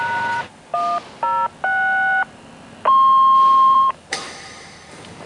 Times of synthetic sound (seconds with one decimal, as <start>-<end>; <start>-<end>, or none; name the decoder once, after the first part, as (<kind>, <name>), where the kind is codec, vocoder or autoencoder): 0.0-0.7 (vocoder, BigVGAN v2); 3.5-5.3